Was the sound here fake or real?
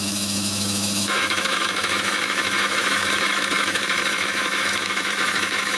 fake